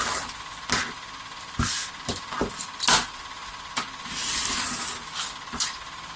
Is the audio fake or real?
real